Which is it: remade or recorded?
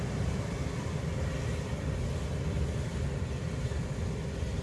recorded